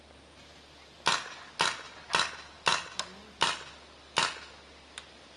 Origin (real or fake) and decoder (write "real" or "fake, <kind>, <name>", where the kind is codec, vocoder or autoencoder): real